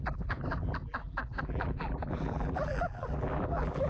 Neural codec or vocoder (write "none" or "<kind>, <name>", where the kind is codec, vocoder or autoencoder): vocoder, BigVGAN v2